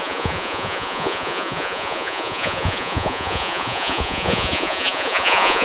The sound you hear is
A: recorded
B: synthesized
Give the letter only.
B